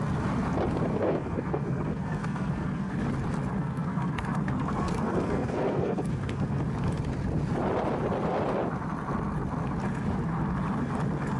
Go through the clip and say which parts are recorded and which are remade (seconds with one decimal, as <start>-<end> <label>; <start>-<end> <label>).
0.0-0.9 recorded; 0.9-2.9 remade; 2.9-3.6 recorded; 3.6-6.6 remade; 6.6-11.4 recorded